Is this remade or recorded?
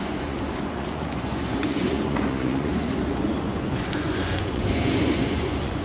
remade